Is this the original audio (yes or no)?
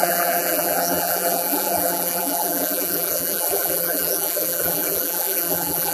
no